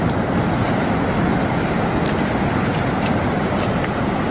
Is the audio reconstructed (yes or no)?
no